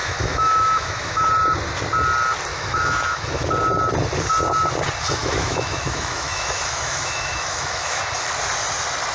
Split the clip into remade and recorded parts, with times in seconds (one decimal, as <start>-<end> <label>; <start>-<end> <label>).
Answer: 0.0-1.3 remade; 1.3-2.5 recorded; 2.5-3.5 remade; 3.5-5.2 recorded; 5.2-8.0 remade; 8.0-9.1 recorded